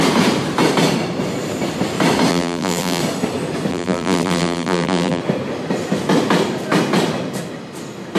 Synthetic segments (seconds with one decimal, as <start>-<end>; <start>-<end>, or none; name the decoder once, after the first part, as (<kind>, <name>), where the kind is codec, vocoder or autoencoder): 2.3-3.0 (vocoder, BigVGAN v2); 3.7-5.2